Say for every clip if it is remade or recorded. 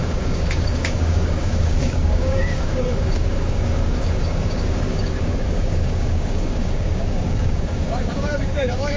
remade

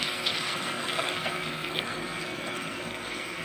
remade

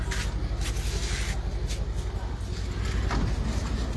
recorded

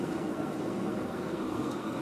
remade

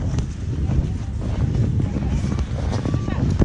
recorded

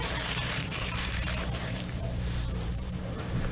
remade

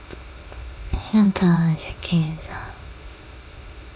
remade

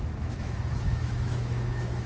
remade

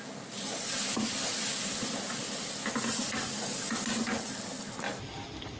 recorded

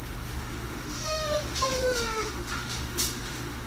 remade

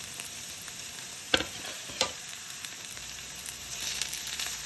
remade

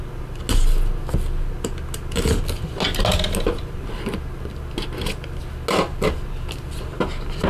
recorded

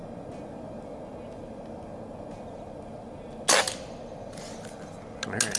recorded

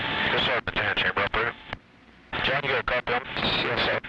recorded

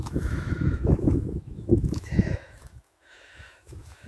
remade